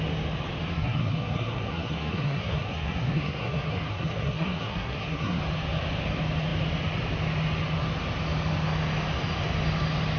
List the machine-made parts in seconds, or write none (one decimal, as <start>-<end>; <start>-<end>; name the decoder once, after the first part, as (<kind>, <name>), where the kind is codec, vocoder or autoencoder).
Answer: 0.6-5.4 (codec, SNAC)